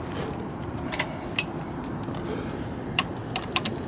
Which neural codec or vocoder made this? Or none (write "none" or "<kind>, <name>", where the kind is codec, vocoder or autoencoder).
none